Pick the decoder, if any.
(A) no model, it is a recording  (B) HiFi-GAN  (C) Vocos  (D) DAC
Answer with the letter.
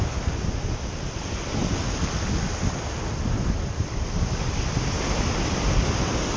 A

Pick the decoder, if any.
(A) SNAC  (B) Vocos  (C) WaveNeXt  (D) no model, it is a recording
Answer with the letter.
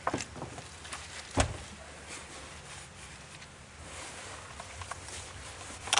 D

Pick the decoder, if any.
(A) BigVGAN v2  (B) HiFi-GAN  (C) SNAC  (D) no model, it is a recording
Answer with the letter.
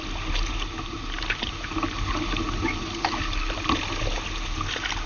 D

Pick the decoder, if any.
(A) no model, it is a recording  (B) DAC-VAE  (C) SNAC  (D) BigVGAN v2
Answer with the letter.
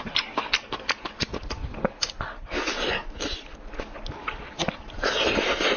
A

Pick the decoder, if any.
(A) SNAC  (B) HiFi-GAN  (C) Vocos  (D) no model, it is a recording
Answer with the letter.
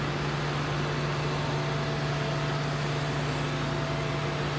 D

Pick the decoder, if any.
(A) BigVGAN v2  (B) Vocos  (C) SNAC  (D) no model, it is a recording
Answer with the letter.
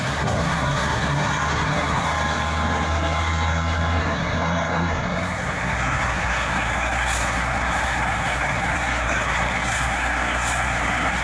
C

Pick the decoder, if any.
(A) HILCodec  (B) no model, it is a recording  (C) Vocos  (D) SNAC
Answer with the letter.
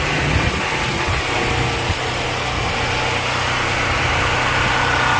B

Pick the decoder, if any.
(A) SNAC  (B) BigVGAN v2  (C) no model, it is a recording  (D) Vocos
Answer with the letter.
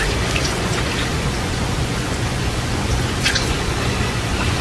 D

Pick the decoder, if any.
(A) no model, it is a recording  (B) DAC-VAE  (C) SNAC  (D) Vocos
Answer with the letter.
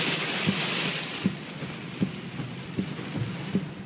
A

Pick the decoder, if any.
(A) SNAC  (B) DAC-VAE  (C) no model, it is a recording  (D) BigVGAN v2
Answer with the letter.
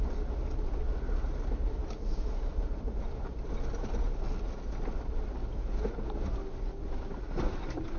C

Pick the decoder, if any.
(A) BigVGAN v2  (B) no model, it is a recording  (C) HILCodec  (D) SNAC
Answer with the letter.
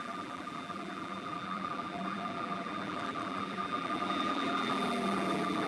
A